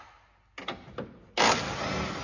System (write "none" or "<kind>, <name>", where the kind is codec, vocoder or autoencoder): none